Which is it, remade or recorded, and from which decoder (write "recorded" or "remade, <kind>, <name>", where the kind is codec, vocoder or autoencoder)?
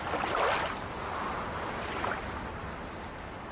recorded